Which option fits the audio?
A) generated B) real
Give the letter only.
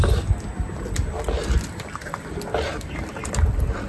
B